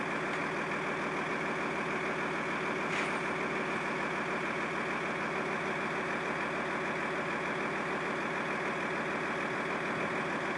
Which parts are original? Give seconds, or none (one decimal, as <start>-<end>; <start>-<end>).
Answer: 0.0-10.6